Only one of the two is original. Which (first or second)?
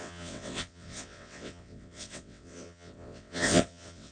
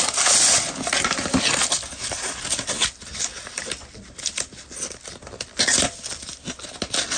second